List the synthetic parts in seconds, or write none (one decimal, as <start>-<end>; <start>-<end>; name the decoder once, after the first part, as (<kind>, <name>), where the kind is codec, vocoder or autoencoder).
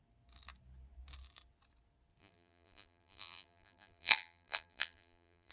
2.2-5.5 (vocoder, BigVGAN v2)